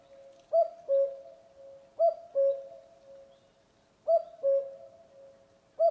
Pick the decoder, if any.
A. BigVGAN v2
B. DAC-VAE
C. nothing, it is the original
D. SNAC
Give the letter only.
C